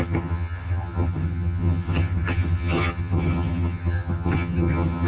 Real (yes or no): no